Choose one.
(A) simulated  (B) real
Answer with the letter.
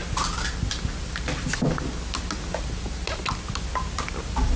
B